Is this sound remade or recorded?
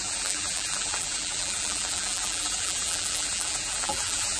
remade